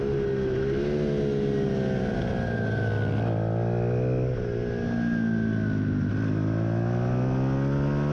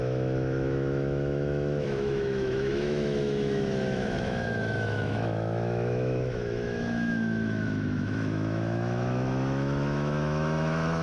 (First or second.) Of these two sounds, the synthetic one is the second